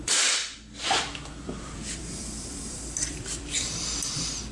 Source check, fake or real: fake